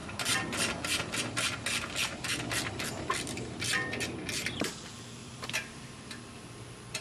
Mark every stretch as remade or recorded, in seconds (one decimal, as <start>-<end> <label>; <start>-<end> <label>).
0.0-1.2 remade; 1.2-5.2 recorded; 5.2-6.4 remade; 6.4-7.0 recorded